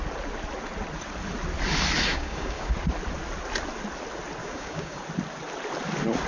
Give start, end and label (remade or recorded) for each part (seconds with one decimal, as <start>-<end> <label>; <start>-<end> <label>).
0.0-2.1 recorded; 2.1-2.7 remade; 2.7-4.4 recorded; 4.4-5.0 remade; 5.0-6.3 recorded